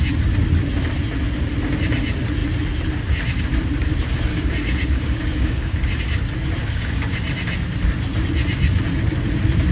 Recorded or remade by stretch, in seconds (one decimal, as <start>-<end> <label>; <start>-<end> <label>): 0.0-4.3 recorded; 4.3-6.0 remade; 6.0-6.6 recorded; 6.6-7.2 remade; 7.2-9.7 recorded

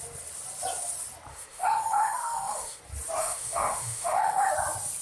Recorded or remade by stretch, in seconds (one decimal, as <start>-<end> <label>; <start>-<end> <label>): 0.0-1.3 recorded; 1.3-2.8 remade; 2.8-3.2 recorded; 3.2-4.5 remade; 4.5-5.0 recorded

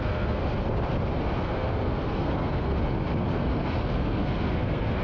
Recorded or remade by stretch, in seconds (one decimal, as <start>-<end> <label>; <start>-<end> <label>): 0.0-0.4 remade; 0.4-1.4 recorded; 1.4-2.7 remade; 2.7-3.2 recorded; 3.2-5.0 remade

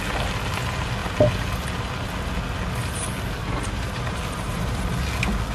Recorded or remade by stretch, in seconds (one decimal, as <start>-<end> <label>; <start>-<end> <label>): 0.0-3.4 recorded; 3.4-4.8 remade; 4.8-5.5 recorded

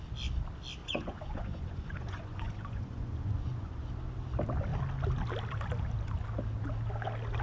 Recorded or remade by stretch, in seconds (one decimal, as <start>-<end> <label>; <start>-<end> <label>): 0.0-0.8 recorded; 0.8-3.9 remade; 3.9-7.4 recorded

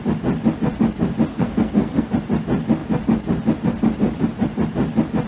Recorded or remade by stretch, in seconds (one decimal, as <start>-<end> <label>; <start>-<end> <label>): 0.0-1.3 recorded; 1.3-2.1 remade; 2.1-5.3 recorded

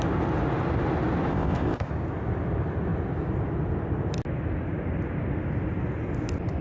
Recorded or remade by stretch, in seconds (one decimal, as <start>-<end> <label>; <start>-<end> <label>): 0.0-1.3 recorded; 1.3-1.9 remade; 1.9-6.6 recorded

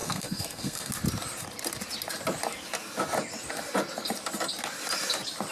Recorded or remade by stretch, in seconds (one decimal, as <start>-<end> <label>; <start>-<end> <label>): 0.0-0.9 remade; 0.9-5.5 recorded